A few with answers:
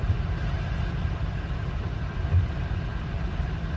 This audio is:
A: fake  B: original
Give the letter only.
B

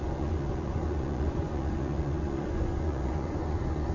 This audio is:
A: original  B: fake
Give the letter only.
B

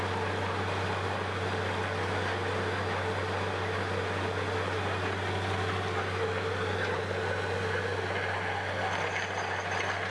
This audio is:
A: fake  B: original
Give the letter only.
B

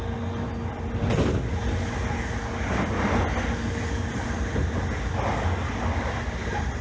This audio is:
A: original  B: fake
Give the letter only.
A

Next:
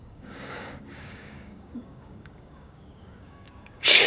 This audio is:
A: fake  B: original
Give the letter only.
A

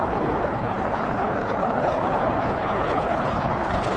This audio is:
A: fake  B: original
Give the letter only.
A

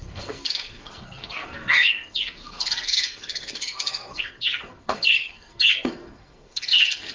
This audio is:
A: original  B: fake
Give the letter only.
B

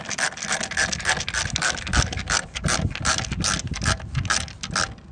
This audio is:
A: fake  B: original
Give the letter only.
B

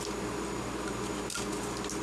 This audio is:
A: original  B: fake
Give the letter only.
A